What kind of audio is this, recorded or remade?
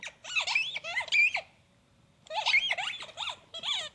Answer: remade